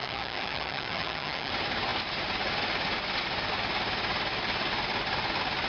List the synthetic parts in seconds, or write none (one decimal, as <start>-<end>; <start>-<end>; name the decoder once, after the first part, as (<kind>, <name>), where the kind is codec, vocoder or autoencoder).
0.0-1.5 (vocoder, HiFi-GAN)

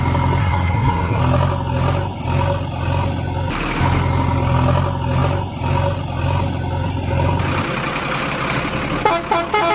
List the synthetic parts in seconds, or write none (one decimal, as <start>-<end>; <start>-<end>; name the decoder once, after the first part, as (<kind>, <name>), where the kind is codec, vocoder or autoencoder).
0.4-1.2 (codec, SNAC)

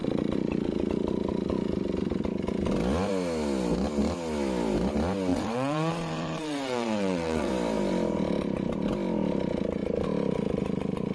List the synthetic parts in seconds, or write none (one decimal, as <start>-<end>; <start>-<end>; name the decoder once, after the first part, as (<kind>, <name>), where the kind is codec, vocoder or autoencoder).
5.3-7.5 (vocoder, WaveNeXt)

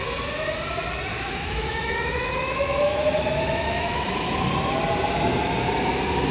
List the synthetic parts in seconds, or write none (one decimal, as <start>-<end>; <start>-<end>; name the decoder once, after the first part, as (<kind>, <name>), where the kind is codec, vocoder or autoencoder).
1.1-4.5 (autoencoder, DAC-VAE)

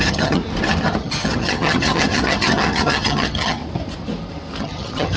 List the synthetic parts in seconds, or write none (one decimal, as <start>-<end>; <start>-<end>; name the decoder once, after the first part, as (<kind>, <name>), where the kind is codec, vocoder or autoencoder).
0.0-0.4 (vocoder, HiFi-GAN); 1.0-3.6; 4.6-5.2

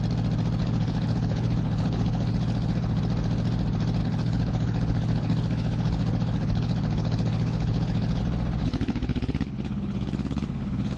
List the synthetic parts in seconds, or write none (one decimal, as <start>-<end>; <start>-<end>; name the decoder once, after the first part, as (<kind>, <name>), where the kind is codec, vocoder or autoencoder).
0.6-3.0 (codec, HILCodec); 4.0-8.2; 8.6-11.0

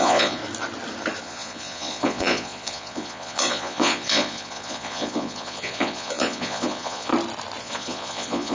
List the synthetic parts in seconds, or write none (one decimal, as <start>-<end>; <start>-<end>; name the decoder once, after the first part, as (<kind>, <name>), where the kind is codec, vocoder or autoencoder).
0.0-0.4 (vocoder, Vocos); 1.2-7.1; 7.6-8.5

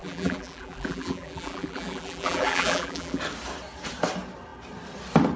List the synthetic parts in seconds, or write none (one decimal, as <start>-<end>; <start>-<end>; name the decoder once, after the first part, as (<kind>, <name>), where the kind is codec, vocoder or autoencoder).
0.0-3.2 (vocoder, BigVGAN v2)